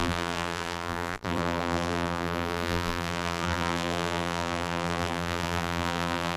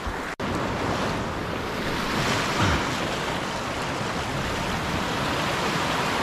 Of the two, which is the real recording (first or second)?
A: second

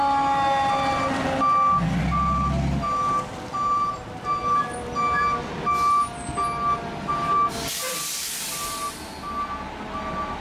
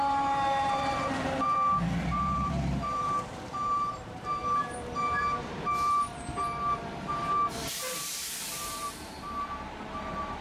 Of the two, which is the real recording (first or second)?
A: first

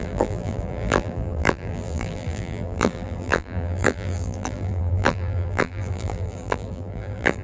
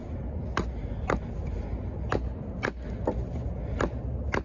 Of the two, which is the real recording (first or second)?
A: second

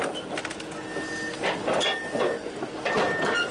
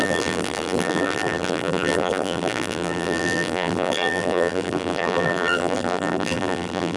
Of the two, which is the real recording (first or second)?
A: first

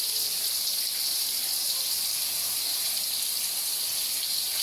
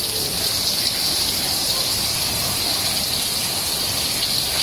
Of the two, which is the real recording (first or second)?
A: second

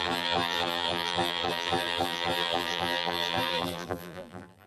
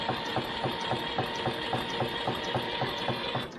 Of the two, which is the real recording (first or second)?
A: second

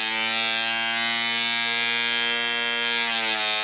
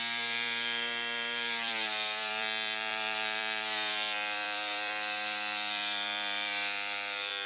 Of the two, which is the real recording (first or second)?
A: first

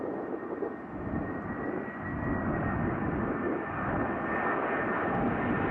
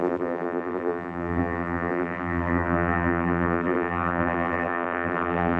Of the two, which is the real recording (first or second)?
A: first